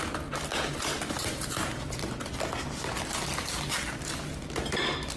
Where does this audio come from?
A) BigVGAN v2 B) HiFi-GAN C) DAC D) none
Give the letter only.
D